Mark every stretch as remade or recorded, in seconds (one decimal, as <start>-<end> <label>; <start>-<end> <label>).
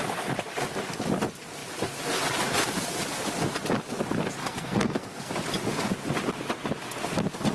0.0-4.4 recorded; 4.4-5.3 remade; 5.3-7.5 recorded